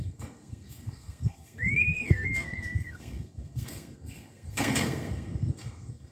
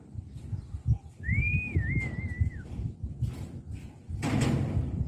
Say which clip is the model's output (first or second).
first